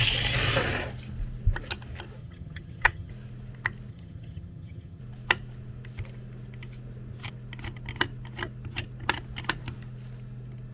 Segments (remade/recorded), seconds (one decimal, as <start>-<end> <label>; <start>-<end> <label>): 0.0-2.2 recorded; 2.2-3.1 remade; 3.1-3.9 recorded; 3.9-5.0 remade; 5.0-10.7 recorded